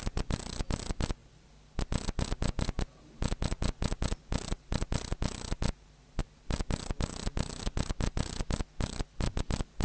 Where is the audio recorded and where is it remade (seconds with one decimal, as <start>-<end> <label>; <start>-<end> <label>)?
0.0-9.8 recorded